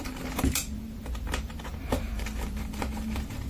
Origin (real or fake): fake